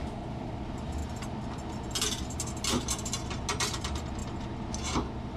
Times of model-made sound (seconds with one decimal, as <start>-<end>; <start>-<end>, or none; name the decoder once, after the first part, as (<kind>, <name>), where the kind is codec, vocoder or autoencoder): 0.0-1.0 (vocoder, BigVGAN v2); 3.6-4.2

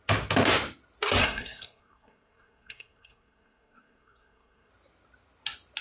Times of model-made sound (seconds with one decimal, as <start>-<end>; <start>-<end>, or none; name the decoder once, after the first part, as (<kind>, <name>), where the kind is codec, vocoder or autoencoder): 1.2-4.7 (codec, SNAC)

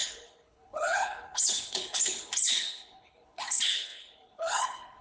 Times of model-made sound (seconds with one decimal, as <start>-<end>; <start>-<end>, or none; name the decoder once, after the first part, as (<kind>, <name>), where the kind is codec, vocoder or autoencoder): 0.0-5.0 (codec, HILCodec)

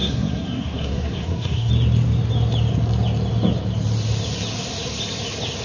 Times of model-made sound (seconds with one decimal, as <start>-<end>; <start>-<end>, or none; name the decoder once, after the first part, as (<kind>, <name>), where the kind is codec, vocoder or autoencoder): 0.0-1.7 (codec, SNAC)

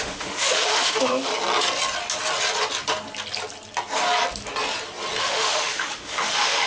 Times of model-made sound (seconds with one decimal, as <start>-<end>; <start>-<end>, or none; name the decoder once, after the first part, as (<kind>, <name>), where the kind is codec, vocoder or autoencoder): 0.0-1.3 (autoencoder, DAC-VAE); 5.2-6.7

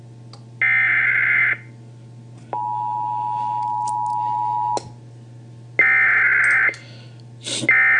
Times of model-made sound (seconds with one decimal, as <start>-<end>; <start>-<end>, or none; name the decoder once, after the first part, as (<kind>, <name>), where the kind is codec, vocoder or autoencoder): none

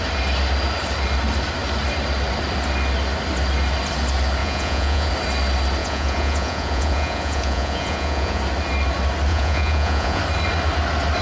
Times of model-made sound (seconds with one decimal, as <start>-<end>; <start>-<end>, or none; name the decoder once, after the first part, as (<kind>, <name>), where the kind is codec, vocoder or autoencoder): 4.4-5.1 (vocoder, Vocos); 5.8-8.4; 9.3-10.2

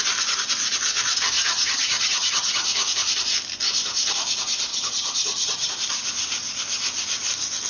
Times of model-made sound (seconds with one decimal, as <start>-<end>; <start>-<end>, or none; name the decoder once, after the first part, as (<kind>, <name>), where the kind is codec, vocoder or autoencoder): 1.4-2.6 (vocoder, HiFi-GAN); 4.7-5.7